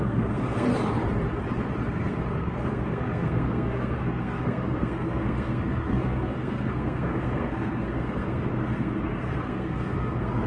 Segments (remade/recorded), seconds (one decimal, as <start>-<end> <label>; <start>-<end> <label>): 0.0-0.7 remade; 0.7-1.9 recorded; 1.9-10.5 remade